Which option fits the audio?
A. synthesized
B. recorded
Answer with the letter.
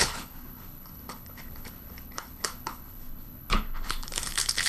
A